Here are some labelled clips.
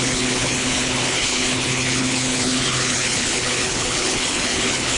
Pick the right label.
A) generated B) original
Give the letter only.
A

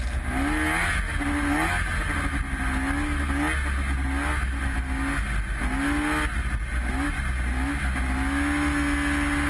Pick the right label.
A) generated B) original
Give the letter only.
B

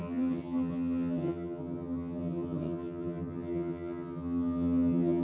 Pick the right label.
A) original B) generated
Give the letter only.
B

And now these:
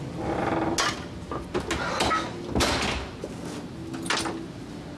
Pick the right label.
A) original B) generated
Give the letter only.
A